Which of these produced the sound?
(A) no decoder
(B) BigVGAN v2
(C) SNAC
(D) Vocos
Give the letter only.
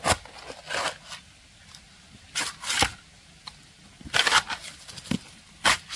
A